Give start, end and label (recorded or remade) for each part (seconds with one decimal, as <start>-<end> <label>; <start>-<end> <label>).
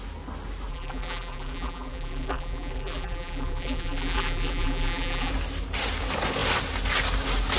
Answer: 0.0-0.7 recorded; 0.7-5.3 remade; 5.3-7.6 recorded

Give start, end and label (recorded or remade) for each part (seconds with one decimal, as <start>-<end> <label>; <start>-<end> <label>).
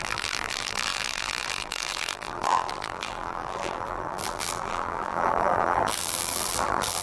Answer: 0.0-7.0 remade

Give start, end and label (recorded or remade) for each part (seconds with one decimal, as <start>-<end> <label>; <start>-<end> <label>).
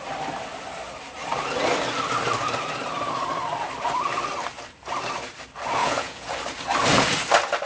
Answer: 0.0-5.8 recorded; 5.8-6.3 remade; 6.3-7.7 recorded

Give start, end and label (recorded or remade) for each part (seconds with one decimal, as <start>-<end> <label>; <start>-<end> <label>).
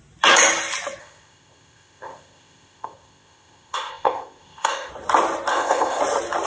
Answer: 0.0-1.0 recorded; 1.0-4.9 remade; 4.9-5.5 recorded; 5.5-6.0 remade; 6.0-6.5 recorded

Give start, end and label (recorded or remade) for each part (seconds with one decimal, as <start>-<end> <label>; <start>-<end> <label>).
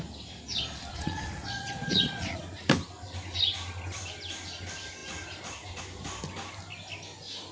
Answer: 0.0-0.9 recorded; 0.9-2.4 remade; 2.4-7.5 recorded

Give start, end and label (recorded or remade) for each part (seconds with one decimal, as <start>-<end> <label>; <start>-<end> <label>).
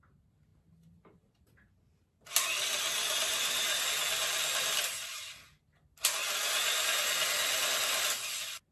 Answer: 0.0-8.7 recorded